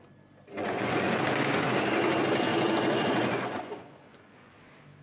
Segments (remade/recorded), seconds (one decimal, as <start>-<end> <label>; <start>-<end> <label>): 0.0-0.6 recorded; 0.6-1.8 remade; 1.8-2.5 recorded; 2.5-4.6 remade; 4.6-5.0 recorded